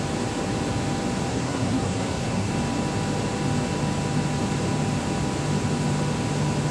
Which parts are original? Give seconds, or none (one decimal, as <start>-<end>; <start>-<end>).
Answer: 0.0-1.3; 2.5-6.7